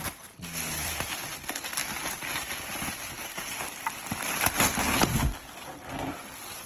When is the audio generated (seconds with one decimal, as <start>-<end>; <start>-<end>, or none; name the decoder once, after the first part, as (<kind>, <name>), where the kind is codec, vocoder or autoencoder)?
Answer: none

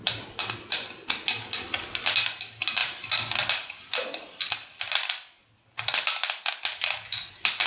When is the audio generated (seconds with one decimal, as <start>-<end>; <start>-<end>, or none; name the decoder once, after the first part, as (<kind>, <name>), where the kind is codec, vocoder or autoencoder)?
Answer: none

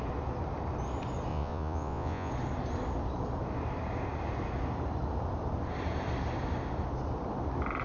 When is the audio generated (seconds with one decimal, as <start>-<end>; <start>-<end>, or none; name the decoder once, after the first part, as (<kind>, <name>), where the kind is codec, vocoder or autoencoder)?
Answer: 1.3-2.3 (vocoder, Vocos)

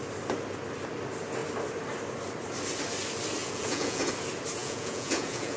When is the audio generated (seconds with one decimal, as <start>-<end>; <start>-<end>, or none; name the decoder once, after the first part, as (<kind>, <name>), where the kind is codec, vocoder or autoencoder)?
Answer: 3.4-4.1 (vocoder, Vocos); 4.6-5.6